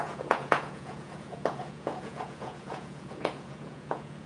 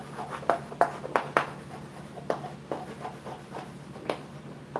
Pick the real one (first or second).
second